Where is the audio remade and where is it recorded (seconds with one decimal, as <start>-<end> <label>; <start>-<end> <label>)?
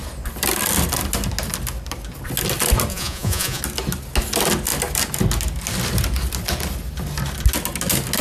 0.0-2.9 recorded; 2.9-3.6 remade; 3.6-8.2 recorded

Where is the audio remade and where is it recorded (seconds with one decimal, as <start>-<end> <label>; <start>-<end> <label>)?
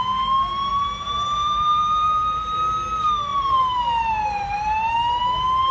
0.0-1.4 recorded; 1.4-2.7 remade; 2.7-3.3 recorded; 3.3-4.9 remade; 4.9-5.7 recorded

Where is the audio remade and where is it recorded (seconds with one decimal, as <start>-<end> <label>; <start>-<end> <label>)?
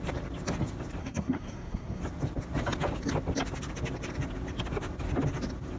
0.0-1.0 recorded; 1.0-2.0 remade; 2.0-5.8 recorded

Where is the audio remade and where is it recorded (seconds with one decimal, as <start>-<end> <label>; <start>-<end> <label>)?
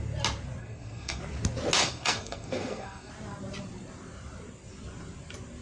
0.0-0.6 recorded; 0.6-1.2 remade; 1.2-1.8 recorded; 1.8-3.1 remade; 3.1-5.6 recorded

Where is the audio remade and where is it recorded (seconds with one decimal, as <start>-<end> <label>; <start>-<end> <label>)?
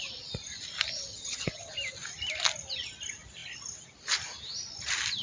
0.0-1.1 recorded; 1.1-1.7 remade; 1.7-5.2 recorded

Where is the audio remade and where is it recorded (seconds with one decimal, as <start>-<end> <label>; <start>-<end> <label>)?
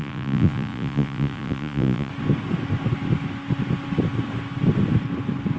0.0-2.1 remade; 2.1-5.6 recorded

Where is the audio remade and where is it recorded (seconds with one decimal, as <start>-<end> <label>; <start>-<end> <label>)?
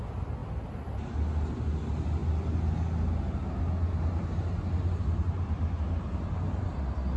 0.0-7.2 recorded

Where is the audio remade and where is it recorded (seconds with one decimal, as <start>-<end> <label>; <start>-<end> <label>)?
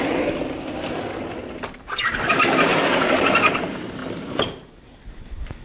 0.0-5.6 recorded